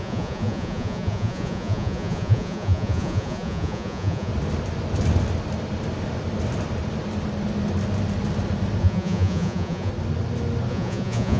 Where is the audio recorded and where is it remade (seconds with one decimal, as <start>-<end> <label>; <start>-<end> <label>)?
0.0-4.3 remade; 4.3-8.8 recorded; 8.8-9.9 remade; 9.9-10.7 recorded; 10.7-11.4 remade